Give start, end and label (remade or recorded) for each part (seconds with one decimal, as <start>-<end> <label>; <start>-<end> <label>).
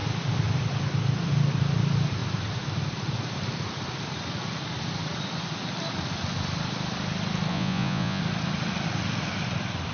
0.0-7.5 recorded; 7.5-8.2 remade; 8.2-9.9 recorded